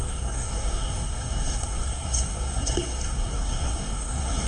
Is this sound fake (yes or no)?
yes